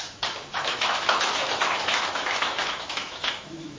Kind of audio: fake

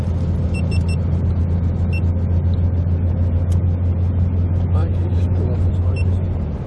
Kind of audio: real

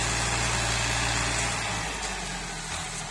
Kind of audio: real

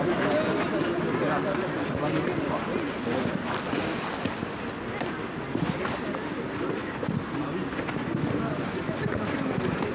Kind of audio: real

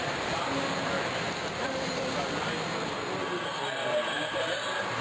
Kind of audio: real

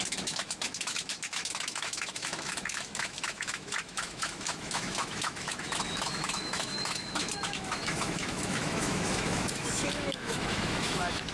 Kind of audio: fake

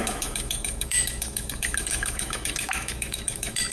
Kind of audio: fake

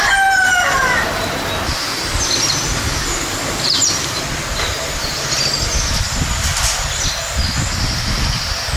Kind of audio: real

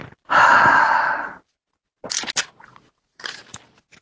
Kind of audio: real